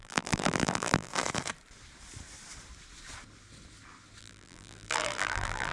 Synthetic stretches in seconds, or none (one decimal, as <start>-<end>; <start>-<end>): 0.0-1.1; 4.2-5.7